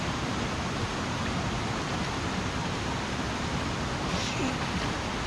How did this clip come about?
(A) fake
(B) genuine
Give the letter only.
B